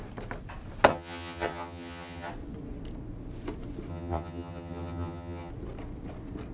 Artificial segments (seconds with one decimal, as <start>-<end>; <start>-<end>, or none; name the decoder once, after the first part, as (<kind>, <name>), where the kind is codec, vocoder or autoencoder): 0.9-2.3 (vocoder, HiFi-GAN); 3.9-5.5

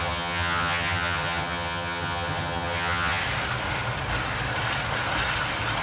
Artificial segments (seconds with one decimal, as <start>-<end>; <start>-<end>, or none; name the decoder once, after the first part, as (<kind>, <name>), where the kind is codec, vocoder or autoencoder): 0.0-3.2 (vocoder, HiFi-GAN)

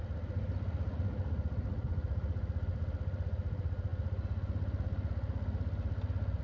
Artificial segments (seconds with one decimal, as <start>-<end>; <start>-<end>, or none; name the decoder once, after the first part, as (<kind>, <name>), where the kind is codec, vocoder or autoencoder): none

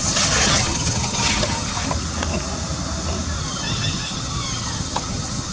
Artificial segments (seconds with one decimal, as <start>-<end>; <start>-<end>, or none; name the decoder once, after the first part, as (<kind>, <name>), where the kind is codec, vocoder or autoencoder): 0.0-1.8 (vocoder, HiFi-GAN); 3.4-5.5

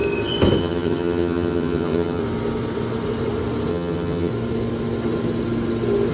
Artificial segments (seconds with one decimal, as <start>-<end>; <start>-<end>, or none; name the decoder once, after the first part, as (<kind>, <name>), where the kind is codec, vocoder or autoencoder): 0.6-2.2 (vocoder, HiFi-GAN); 3.7-4.3

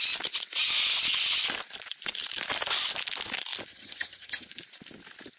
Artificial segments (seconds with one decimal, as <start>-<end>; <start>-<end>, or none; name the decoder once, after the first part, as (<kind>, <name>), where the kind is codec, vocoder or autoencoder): 3.7-4.5 (vocoder, HiFi-GAN)